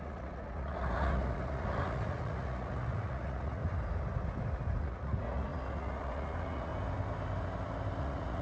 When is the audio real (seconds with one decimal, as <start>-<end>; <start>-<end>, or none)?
3.6-4.8; 6.7-8.0